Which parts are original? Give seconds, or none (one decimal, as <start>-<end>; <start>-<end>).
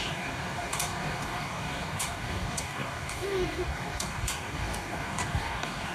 none